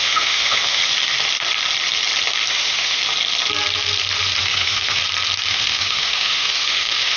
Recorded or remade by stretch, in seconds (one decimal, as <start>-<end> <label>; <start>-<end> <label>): 0.0-0.8 remade; 0.8-2.5 recorded; 2.5-3.0 remade; 3.0-4.4 recorded; 4.4-5.0 remade; 5.0-5.5 recorded; 5.5-7.2 remade

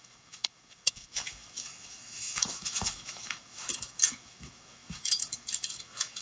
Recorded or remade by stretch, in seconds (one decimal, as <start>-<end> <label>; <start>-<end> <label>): 0.0-6.2 remade